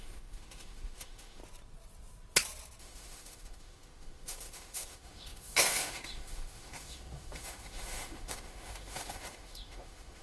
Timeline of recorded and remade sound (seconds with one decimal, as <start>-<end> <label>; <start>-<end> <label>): 0.0-1.4 remade; 1.4-2.8 recorded; 2.8-10.2 remade